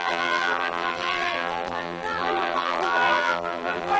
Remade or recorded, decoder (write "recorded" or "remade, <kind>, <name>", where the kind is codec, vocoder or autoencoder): remade, vocoder, BigVGAN v2